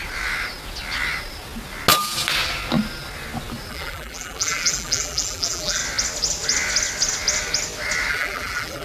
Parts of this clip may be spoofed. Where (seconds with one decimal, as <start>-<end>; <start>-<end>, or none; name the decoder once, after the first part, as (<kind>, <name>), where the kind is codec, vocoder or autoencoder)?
3.7-5.8 (vocoder, BigVGAN v2); 8.1-8.8